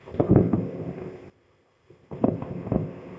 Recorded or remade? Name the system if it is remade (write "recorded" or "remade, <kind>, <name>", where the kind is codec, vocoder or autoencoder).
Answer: remade, codec, ZipCodec